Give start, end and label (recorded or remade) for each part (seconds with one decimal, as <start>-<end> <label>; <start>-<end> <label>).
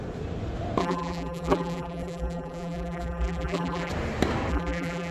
0.0-0.8 recorded; 0.8-3.9 remade; 3.9-4.5 recorded; 4.5-5.1 remade